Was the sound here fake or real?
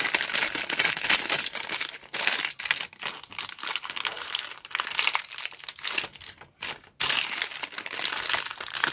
real